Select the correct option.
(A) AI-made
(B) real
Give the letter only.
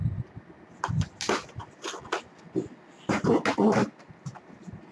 B